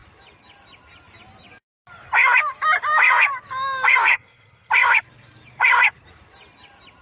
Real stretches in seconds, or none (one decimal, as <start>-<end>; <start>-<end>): 0.0-4.1; 4.7-7.0